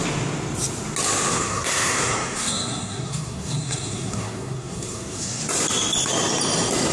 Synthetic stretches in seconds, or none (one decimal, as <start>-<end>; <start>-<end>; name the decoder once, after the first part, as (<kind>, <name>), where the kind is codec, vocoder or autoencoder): 1.3-5.4 (codec, SNAC)

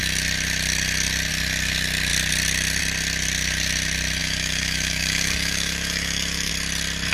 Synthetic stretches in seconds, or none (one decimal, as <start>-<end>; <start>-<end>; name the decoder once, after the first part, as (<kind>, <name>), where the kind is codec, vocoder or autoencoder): 4.2-6.5 (autoencoder, DAC-VAE)